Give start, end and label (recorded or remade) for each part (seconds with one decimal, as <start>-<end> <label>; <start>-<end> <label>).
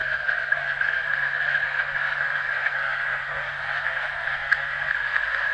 0.0-5.5 remade